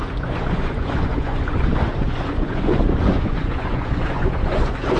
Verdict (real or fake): fake